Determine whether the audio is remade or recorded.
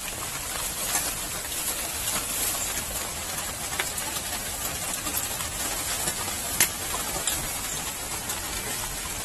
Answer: recorded